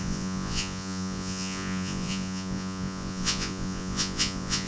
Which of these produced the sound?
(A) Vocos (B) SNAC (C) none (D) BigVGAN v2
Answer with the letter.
A